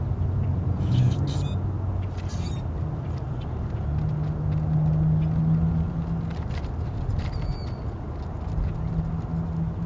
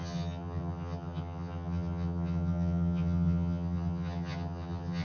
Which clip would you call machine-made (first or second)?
second